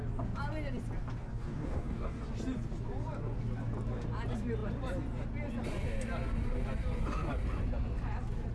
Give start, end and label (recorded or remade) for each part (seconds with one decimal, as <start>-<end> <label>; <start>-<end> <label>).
0.0-1.2 recorded; 1.2-2.2 remade; 2.2-8.5 recorded